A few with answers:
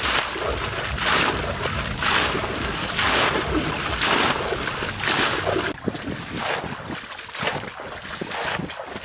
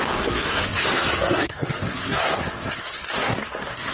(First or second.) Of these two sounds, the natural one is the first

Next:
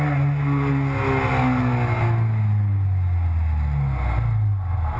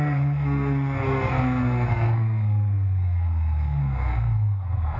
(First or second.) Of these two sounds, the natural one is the first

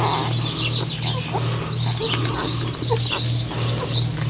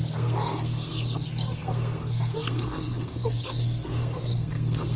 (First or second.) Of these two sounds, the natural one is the first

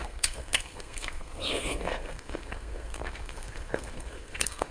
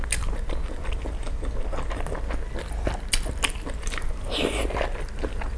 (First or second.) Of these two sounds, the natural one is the second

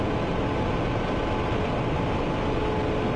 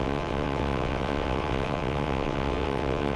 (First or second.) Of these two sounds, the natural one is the first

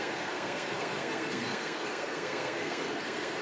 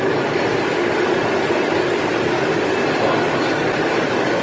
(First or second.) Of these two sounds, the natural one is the second